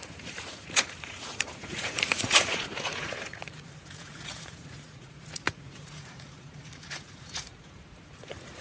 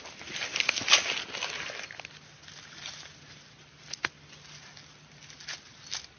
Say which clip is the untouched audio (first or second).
second